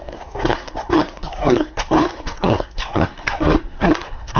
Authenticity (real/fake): fake